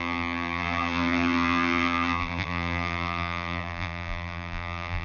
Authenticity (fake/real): fake